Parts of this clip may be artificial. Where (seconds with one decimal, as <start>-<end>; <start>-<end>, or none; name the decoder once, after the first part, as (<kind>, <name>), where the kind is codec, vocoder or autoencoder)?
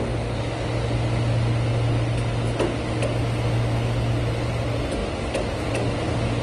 none